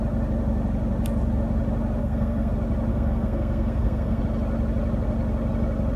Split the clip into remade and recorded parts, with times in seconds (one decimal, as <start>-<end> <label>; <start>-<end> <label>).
0.0-2.0 recorded; 2.0-2.5 remade; 2.5-2.9 recorded; 2.9-4.2 remade; 4.2-6.0 recorded